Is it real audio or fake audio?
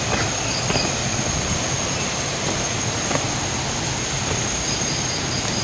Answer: real